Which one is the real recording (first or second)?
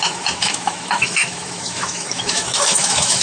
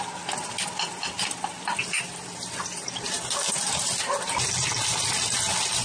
second